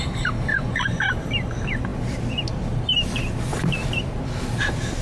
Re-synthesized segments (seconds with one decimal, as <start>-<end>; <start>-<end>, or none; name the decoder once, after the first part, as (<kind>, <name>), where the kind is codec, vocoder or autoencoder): 0.5-1.0 (vocoder, Vocos)